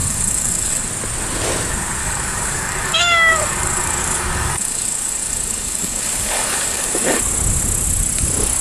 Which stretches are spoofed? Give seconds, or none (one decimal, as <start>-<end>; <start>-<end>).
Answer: 0.0-0.9; 2.0-7.2